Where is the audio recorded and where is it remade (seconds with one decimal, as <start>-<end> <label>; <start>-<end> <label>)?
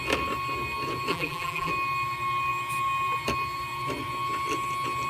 0.0-1.1 recorded; 1.1-1.7 remade; 1.7-5.1 recorded